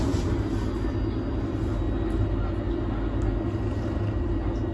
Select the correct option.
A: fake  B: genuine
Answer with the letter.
B